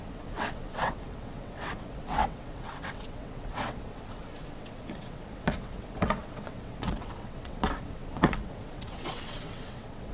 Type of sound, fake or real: fake